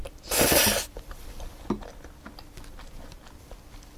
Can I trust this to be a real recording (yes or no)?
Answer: yes